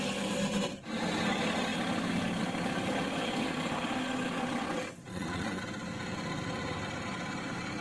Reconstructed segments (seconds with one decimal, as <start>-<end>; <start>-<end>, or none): 5.1-5.6